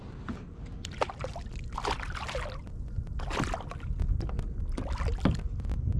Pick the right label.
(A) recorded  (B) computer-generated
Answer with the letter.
A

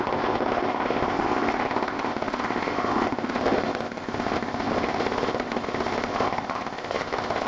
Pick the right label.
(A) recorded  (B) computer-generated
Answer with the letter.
B